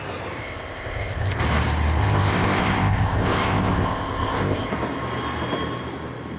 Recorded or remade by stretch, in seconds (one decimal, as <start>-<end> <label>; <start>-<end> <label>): 0.0-0.4 recorded; 0.4-1.4 remade; 1.4-2.0 recorded; 2.0-4.7 remade; 4.7-6.4 recorded